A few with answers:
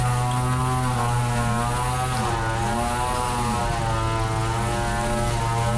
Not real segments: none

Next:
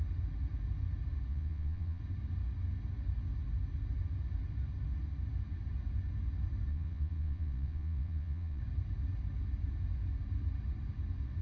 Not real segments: 1.3-2.0 (vocoder, Vocos); 6.7-8.6